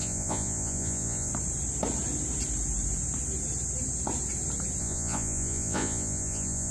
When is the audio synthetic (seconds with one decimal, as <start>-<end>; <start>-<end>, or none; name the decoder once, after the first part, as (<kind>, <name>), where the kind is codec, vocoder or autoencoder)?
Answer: 0.0-1.3 (vocoder, Vocos); 4.8-6.7